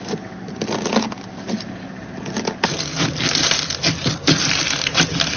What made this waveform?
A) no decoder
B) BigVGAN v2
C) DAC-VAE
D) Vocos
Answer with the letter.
A